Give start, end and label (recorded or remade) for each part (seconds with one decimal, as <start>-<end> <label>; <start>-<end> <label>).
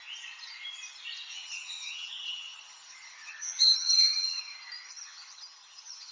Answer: 0.0-1.3 recorded; 1.3-4.4 remade; 4.4-4.9 recorded; 4.9-6.1 remade